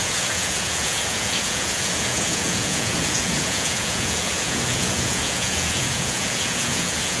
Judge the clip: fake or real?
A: fake